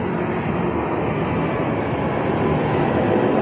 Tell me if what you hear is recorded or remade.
recorded